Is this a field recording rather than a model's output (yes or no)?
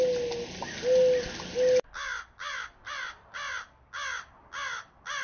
yes